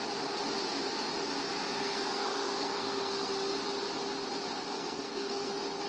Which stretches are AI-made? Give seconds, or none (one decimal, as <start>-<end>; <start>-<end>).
1.7-3.3; 4.7-5.5